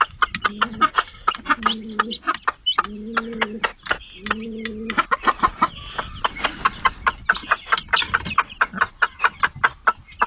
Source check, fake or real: real